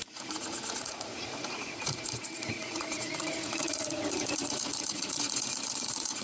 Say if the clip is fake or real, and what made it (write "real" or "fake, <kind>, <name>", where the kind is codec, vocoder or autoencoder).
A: fake, vocoder, Vocos